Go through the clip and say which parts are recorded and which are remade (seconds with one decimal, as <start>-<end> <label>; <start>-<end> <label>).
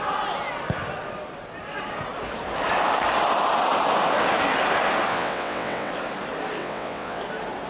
0.0-5.1 recorded; 5.1-5.9 remade; 5.9-6.6 recorded; 6.6-7.2 remade; 7.2-7.7 recorded